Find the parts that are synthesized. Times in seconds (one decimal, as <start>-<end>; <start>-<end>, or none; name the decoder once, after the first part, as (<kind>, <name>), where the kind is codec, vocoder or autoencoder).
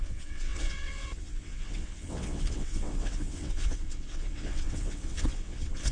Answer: 0.0-5.9 (vocoder, WaveNeXt)